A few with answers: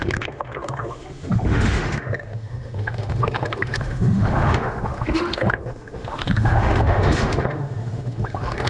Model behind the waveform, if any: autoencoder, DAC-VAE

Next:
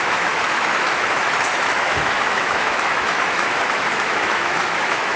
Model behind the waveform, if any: autoencoder, DAC-VAE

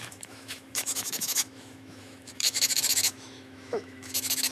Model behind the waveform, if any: autoencoder, DAC-VAE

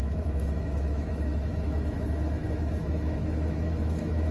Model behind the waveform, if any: autoencoder, DAC-VAE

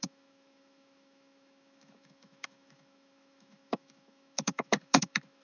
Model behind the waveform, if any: autoencoder, DAC-VAE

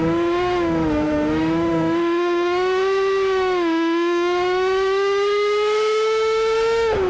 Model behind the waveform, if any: autoencoder, DAC-VAE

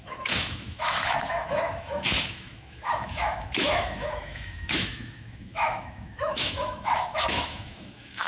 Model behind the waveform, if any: autoencoder, DAC-VAE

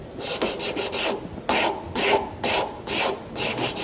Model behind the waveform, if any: none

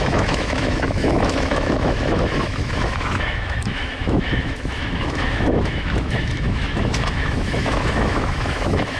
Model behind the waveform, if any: autoencoder, DAC-VAE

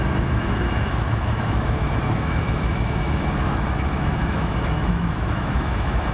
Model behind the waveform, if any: autoencoder, DAC-VAE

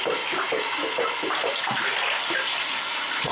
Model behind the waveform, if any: none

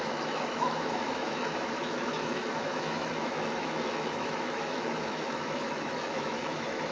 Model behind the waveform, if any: autoencoder, DAC-VAE